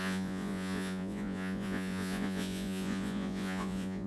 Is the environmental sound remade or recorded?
remade